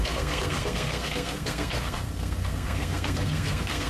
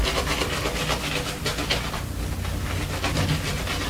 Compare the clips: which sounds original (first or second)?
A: second